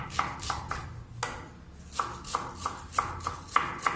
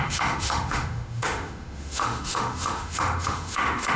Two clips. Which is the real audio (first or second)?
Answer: first